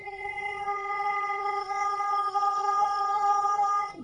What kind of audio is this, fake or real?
fake